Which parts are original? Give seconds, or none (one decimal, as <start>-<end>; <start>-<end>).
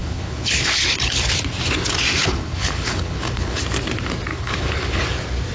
1.3-2.2; 3.6-4.3; 5.0-5.5